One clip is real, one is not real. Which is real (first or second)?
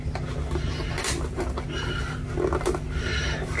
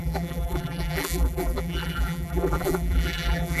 first